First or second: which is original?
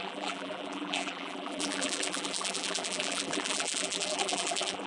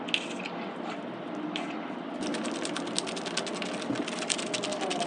second